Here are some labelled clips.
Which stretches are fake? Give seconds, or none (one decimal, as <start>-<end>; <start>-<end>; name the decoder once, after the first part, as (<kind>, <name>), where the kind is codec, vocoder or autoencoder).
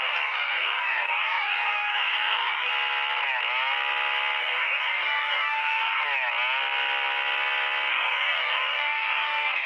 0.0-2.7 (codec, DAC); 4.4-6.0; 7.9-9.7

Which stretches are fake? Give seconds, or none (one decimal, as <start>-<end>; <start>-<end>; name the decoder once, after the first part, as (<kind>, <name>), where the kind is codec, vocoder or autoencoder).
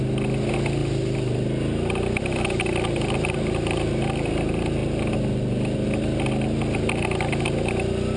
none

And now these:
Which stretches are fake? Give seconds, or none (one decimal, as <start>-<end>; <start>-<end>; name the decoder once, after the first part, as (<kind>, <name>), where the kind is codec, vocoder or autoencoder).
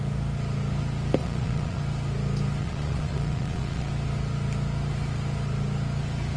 1.2-1.8 (vocoder, Vocos); 2.6-3.9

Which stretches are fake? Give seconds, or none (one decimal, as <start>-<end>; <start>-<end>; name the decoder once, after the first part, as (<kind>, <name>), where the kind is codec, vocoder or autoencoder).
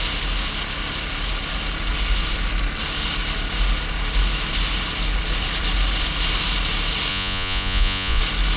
7.1-8.2 (vocoder, Vocos)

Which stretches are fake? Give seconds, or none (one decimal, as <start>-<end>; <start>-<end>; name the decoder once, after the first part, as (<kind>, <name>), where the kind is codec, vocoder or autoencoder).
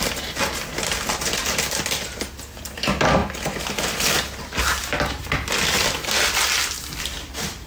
0.0-0.4 (vocoder, BigVGAN v2); 1.4-3.2; 7.0-7.7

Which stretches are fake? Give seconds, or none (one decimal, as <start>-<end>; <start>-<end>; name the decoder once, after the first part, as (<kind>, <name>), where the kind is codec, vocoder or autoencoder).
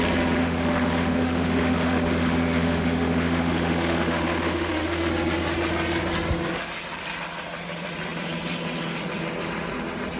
0.4-5.1 (autoencoder, DAC-VAE)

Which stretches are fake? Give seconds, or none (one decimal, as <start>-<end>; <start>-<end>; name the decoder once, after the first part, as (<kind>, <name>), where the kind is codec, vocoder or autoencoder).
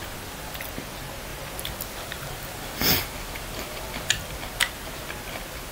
none